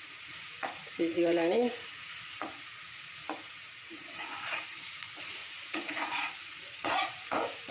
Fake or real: fake